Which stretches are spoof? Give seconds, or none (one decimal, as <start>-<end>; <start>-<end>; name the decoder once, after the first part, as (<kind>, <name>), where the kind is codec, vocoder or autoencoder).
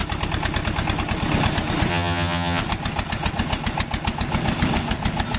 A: 1.9-2.6 (vocoder, HiFi-GAN)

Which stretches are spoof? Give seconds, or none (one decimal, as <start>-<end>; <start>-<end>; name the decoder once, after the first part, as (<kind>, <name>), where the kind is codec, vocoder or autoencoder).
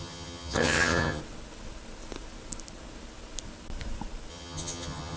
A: 0.0-1.2 (vocoder, HiFi-GAN); 4.3-5.2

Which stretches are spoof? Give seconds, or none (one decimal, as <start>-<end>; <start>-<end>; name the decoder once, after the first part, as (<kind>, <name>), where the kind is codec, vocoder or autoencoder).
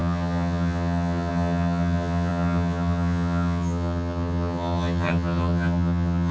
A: 0.0-6.3 (vocoder, HiFi-GAN)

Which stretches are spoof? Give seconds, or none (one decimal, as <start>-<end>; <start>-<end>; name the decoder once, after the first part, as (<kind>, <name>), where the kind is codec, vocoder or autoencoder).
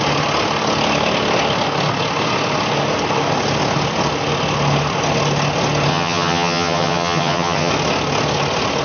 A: 5.9-7.7 (vocoder, HiFi-GAN)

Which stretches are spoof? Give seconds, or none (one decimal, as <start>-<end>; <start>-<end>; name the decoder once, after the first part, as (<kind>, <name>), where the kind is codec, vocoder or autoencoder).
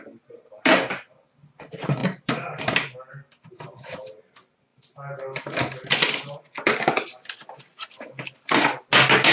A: none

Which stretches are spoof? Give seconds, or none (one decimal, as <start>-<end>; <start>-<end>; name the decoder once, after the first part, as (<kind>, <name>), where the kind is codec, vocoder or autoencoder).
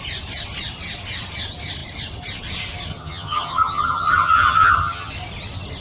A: 2.9-5.1 (vocoder, HiFi-GAN)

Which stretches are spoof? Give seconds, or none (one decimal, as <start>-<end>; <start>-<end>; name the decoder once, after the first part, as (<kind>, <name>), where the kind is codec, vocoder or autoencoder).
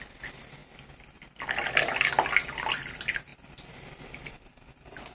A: none